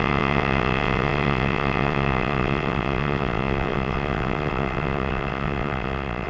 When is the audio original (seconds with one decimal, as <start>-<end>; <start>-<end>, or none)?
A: none